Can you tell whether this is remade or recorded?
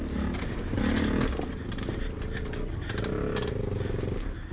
recorded